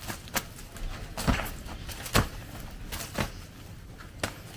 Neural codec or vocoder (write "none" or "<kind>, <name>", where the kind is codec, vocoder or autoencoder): none